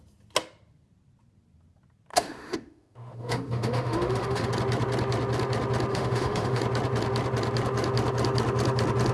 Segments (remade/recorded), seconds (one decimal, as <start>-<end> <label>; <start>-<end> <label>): 0.0-2.1 recorded; 2.1-4.5 remade; 4.5-5.9 recorded; 5.9-6.6 remade; 6.6-9.1 recorded